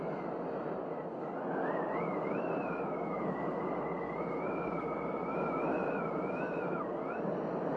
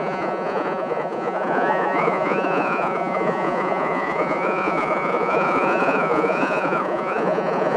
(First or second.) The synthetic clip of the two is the second